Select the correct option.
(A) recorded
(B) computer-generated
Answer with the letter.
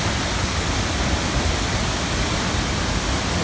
A